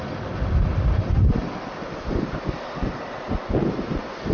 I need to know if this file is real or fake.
real